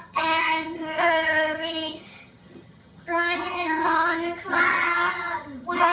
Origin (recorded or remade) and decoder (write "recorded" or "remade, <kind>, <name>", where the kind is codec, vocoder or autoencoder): remade, vocoder, HiFi-GAN